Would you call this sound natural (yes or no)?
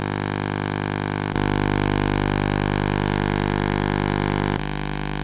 yes